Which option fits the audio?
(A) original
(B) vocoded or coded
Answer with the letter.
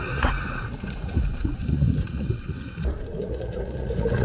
B